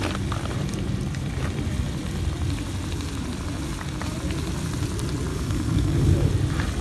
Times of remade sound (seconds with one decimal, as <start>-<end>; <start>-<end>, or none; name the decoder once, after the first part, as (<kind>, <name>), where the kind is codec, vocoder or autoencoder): 5.3-6.3 (codec, DAC)